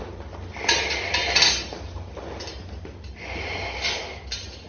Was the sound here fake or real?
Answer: real